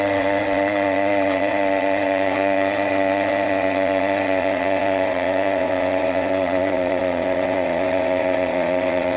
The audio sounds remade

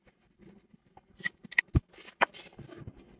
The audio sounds recorded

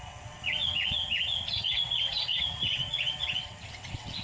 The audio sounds remade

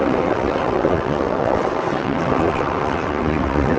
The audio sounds remade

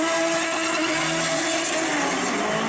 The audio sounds recorded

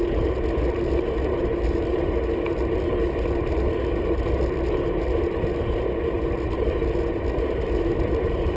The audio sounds recorded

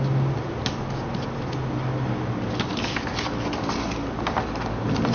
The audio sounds recorded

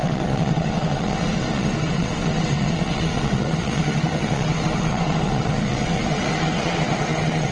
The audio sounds remade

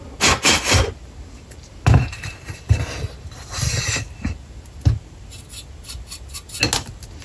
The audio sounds recorded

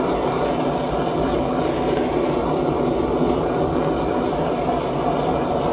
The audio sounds recorded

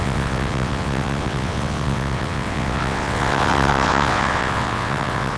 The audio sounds remade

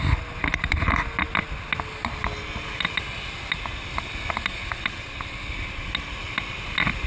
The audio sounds recorded